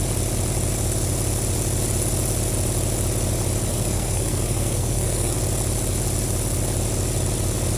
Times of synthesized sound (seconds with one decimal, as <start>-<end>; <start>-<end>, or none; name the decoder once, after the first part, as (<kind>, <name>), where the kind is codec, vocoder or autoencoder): 3.7-5.4 (codec, SNAC)